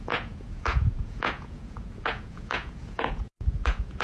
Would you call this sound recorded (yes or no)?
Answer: no